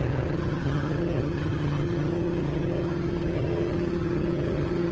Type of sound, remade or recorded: remade